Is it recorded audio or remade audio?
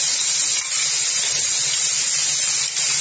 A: recorded